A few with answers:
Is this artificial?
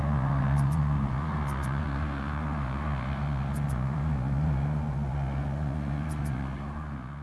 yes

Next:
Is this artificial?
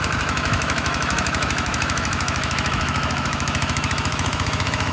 yes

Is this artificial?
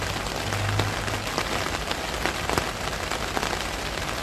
no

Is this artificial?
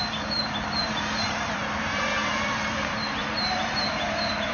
yes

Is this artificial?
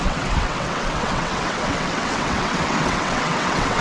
yes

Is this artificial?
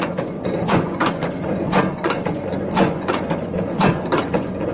yes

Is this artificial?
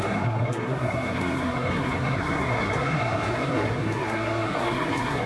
yes